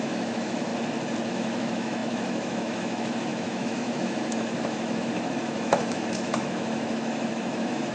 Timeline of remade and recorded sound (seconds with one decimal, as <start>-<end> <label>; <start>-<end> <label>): 0.0-0.7 remade; 0.7-1.3 recorded; 1.3-7.9 remade